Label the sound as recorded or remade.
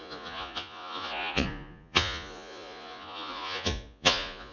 remade